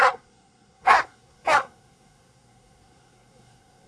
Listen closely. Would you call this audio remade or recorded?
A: remade